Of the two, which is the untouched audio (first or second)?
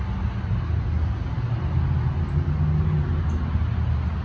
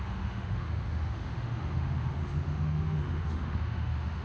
first